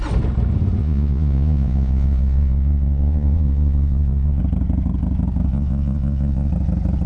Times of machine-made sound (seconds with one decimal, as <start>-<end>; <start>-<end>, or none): 0.8-4.4; 5.5-6.5